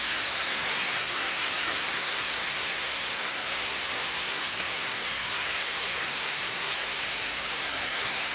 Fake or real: fake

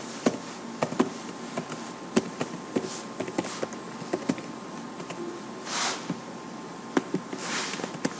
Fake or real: real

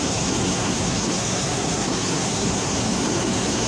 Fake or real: fake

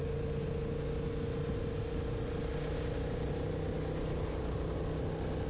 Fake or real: real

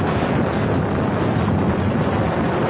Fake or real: real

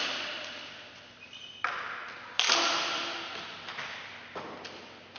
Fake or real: real